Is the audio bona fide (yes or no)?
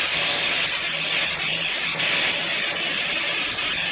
yes